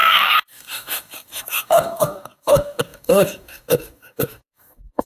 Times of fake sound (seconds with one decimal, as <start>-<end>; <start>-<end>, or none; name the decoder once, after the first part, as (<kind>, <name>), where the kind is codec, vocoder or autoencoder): 0.0-5.1 (codec, DAC)